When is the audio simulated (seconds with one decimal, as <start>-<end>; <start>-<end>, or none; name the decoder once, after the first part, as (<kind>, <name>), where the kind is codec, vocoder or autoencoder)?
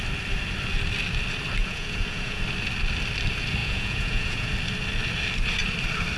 1.6-2.4 (vocoder, Vocos); 3.6-4.5